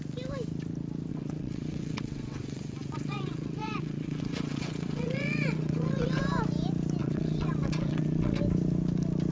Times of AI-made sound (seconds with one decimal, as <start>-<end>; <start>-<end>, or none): 1.1-6.2; 7.0-8.4

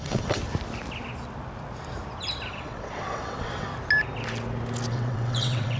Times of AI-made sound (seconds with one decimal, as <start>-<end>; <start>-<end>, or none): 0.0-0.4; 2.5-3.7; 4.9-5.8

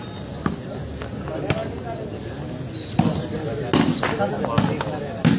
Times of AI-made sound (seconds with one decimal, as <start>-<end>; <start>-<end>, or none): none

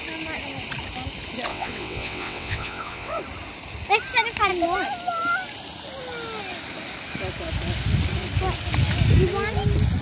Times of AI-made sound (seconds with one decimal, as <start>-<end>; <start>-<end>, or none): 1.5-3.2

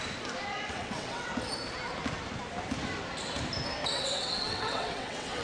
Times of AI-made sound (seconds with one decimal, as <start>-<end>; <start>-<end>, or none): 0.7-1.3; 3.9-5.4

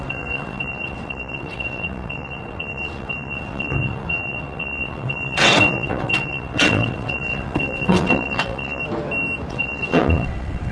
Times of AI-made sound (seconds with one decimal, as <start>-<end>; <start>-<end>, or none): 0.0-8.8; 9.5-10.7